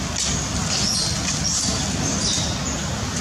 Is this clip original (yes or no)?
yes